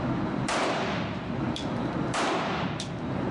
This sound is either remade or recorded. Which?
remade